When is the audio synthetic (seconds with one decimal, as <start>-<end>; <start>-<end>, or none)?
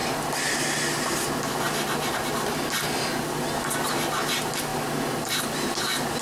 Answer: none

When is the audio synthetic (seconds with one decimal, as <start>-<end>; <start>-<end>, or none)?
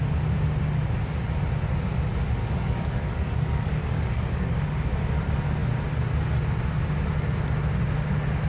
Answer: 2.4-4.9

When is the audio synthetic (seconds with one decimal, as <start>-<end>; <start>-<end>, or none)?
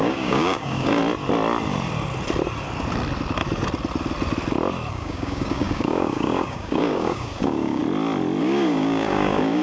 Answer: 0.0-1.0; 4.9-7.8; 8.4-9.6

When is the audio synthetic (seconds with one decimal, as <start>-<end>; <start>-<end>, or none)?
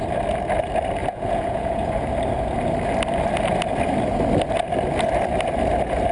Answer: 1.0-2.1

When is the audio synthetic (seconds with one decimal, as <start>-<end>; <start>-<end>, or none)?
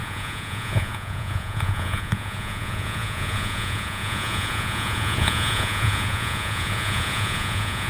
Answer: 0.0-7.9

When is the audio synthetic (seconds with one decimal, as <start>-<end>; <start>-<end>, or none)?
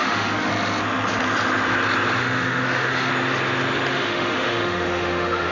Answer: 0.0-0.5; 2.2-3.1; 3.9-5.5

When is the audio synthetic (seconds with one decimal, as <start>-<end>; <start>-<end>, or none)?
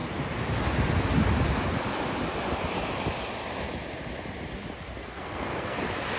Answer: 5.0-5.8